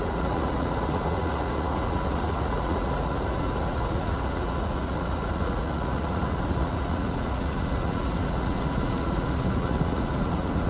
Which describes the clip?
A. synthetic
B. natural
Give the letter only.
A